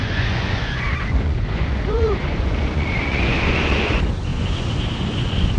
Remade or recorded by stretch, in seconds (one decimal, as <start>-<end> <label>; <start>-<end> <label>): 0.0-5.6 remade

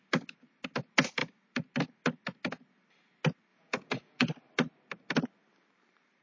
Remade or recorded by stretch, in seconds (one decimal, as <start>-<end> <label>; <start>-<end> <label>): 0.0-3.5 recorded; 3.5-4.3 remade; 4.3-6.2 recorded

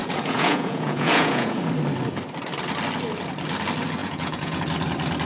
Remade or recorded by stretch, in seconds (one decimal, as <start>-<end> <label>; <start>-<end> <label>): 0.0-1.6 remade; 1.6-4.0 recorded; 4.0-4.6 remade; 4.6-5.2 recorded

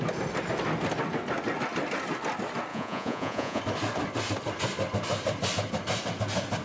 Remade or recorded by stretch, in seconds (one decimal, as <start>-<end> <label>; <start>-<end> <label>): 0.0-2.7 recorded; 2.7-3.6 remade; 3.6-6.6 recorded